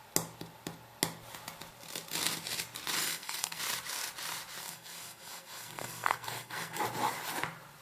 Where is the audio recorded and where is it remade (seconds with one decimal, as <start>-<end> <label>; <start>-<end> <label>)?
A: 0.0-3.0 recorded; 3.0-3.6 remade; 3.6-4.6 recorded; 4.6-6.8 remade; 6.8-7.8 recorded